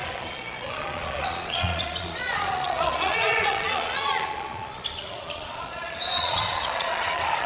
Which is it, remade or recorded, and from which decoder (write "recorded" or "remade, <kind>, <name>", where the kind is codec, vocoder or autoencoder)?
remade, vocoder, Vocos